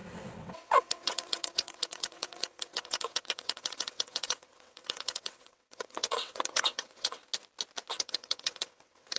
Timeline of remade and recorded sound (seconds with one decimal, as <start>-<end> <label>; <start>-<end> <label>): 0.0-7.2 remade; 7.2-7.9 recorded; 7.9-9.2 remade